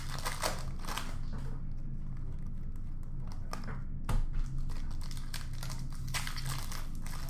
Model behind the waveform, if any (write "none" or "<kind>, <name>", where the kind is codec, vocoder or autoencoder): none